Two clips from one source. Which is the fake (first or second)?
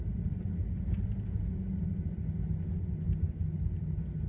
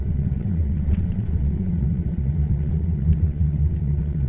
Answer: second